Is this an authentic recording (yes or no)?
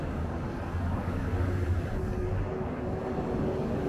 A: no